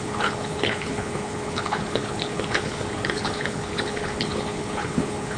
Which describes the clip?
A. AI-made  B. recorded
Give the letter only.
A